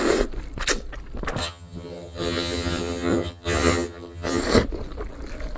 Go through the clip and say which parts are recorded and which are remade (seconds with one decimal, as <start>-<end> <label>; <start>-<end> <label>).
0.0-1.4 recorded; 1.4-4.4 remade; 4.4-5.6 recorded